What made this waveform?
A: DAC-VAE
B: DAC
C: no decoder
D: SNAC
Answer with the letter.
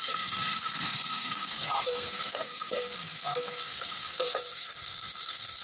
D